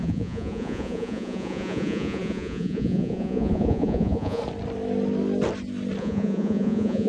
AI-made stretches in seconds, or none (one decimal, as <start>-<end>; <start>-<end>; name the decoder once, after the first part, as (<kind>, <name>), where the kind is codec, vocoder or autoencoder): 0.0-4.4 (vocoder, Vocos); 6.0-7.1